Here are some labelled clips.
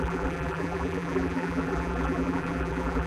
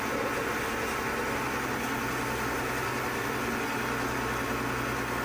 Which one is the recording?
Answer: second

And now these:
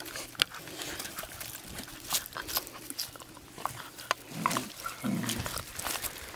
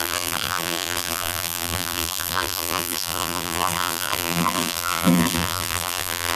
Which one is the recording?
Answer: first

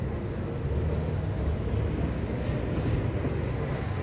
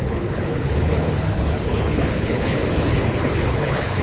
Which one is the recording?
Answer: first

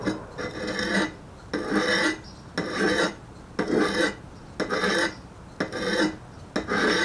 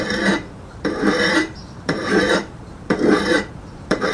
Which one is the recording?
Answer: first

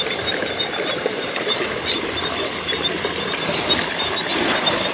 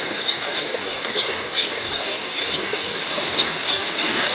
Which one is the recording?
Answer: first